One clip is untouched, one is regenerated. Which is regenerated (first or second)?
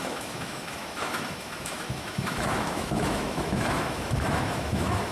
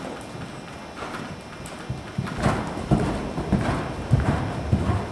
first